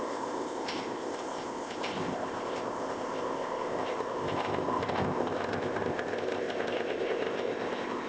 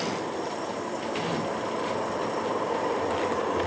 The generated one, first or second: first